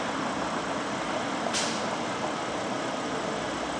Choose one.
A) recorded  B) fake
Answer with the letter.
A